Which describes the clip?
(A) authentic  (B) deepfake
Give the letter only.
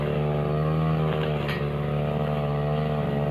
A